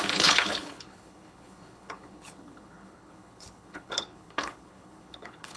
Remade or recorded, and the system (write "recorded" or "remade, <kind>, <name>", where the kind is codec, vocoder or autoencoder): remade, codec, HILCodec